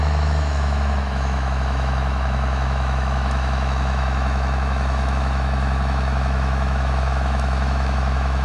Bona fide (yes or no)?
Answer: no